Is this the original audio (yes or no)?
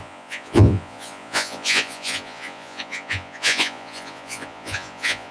no